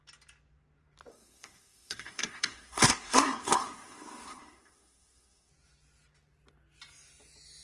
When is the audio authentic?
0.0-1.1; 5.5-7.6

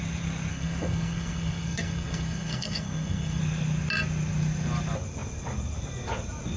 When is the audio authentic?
0.0-0.5; 3.4-6.6

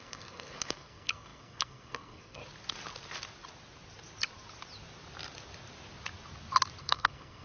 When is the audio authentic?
2.4-6.8

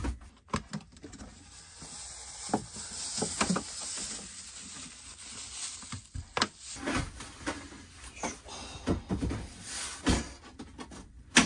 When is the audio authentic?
0.0-11.5

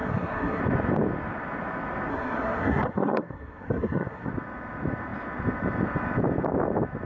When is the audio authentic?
0.6-2.1; 4.3-7.1